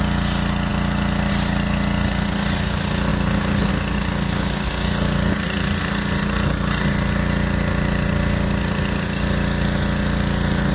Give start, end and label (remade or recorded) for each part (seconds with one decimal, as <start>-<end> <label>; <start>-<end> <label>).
0.0-10.7 recorded